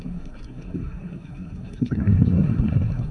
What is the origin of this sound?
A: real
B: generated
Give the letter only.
B